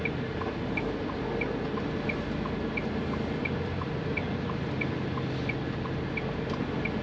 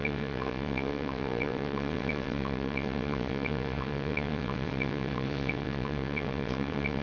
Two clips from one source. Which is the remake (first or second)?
second